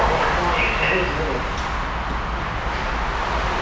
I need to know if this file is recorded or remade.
recorded